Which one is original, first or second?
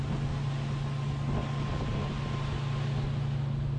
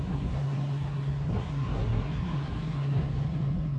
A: first